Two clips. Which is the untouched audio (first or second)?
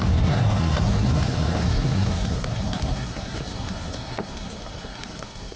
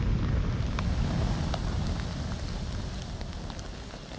second